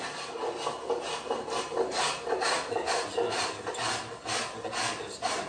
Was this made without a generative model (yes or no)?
yes